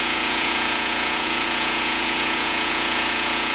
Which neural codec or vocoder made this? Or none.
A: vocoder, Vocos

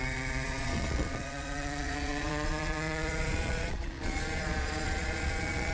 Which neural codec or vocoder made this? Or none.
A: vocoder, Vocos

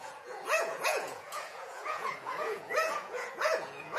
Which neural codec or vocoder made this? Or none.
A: vocoder, Vocos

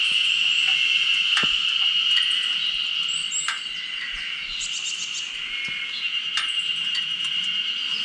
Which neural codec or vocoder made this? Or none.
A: none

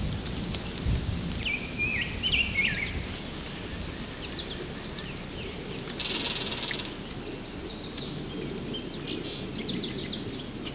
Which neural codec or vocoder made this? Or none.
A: none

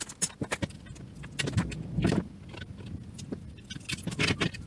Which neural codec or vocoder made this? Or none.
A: none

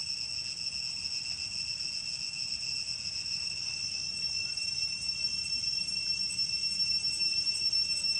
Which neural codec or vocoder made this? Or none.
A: none